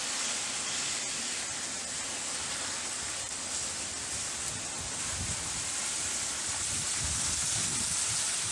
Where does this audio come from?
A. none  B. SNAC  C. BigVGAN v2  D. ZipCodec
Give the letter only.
A